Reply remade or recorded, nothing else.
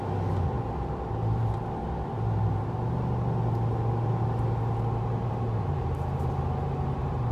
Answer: recorded